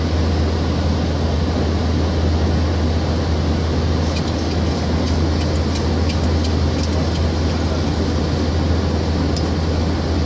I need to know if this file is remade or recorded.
recorded